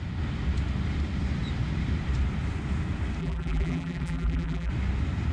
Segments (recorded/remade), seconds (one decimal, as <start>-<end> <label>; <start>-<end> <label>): 0.0-3.2 recorded; 3.2-4.7 remade; 4.7-5.3 recorded